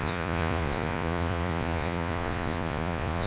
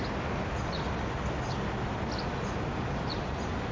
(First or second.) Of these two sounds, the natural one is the second